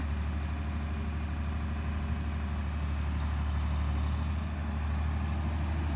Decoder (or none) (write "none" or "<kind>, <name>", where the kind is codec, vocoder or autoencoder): none